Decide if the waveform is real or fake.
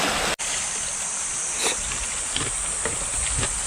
real